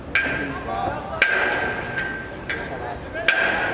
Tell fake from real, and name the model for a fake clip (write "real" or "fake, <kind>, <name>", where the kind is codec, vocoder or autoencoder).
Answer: real